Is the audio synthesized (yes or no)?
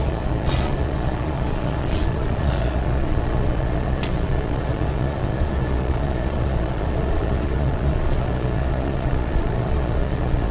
yes